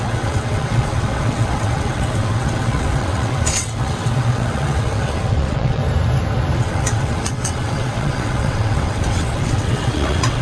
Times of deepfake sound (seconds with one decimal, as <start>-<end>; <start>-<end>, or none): 0.0-5.8; 6.6-10.4